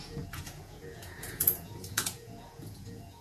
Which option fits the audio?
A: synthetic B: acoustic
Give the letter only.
A